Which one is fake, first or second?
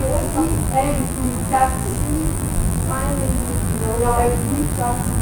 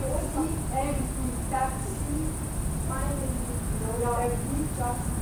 first